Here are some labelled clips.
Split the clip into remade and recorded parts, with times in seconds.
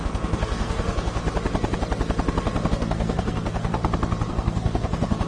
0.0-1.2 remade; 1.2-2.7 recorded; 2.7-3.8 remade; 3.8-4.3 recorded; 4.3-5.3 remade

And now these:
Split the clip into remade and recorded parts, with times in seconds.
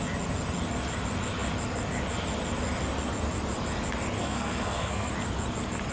0.0-4.2 recorded; 4.2-5.1 remade; 5.1-5.9 recorded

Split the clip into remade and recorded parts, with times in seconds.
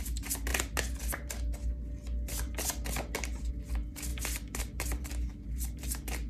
0.0-6.3 recorded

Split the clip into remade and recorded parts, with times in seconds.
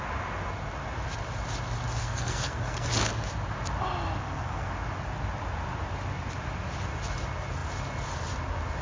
0.0-2.0 recorded; 2.0-2.9 remade; 2.9-4.2 recorded; 4.2-4.7 remade; 4.7-8.8 recorded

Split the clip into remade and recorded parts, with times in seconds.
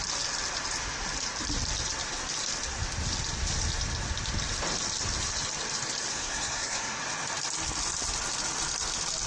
0.0-6.1 recorded; 6.1-7.0 remade; 7.0-9.3 recorded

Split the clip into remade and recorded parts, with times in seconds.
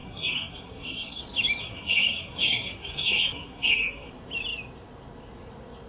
0.0-1.2 remade; 1.2-1.6 recorded; 1.6-4.1 remade; 4.1-5.9 recorded